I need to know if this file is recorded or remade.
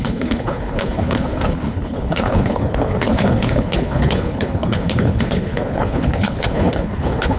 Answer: remade